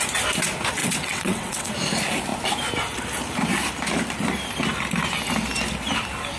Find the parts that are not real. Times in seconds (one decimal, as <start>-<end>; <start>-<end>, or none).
0.8-1.7